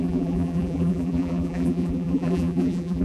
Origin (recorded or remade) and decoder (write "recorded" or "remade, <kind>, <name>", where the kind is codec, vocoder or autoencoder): remade, vocoder, BigVGAN v2